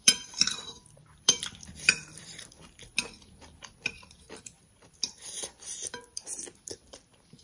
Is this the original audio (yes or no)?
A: no